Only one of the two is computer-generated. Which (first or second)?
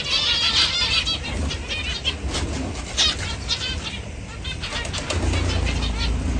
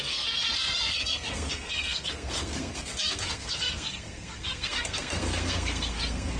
second